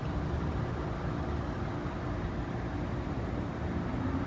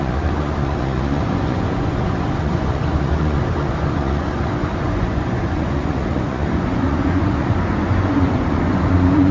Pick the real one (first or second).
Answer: first